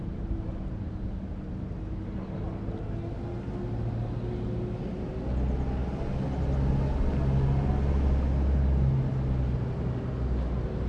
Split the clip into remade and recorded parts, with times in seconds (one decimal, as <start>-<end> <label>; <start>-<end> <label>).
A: 0.0-10.9 recorded